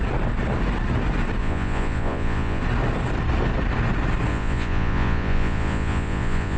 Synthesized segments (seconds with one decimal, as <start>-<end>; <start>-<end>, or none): 1.4-2.6; 4.3-6.6